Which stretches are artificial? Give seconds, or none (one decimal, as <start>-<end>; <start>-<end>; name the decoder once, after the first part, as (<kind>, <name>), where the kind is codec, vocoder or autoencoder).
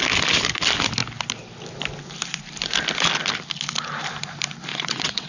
4.7-5.3 (vocoder, WaveNeXt)